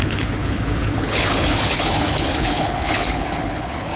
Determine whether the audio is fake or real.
fake